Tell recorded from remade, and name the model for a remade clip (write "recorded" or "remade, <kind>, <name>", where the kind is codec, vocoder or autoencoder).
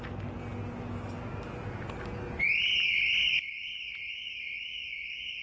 recorded